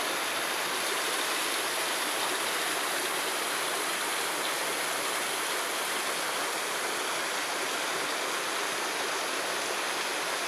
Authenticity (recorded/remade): recorded